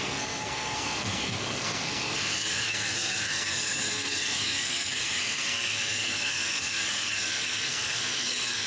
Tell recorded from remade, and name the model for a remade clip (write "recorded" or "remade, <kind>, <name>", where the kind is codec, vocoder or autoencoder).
remade, codec, SNAC